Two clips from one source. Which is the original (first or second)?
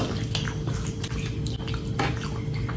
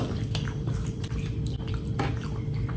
first